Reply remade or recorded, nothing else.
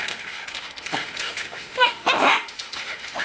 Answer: remade